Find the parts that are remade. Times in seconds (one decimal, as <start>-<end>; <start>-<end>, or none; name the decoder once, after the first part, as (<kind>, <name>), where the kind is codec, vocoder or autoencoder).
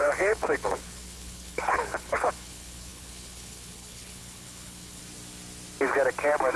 0.0-5.0 (codec, HILCodec)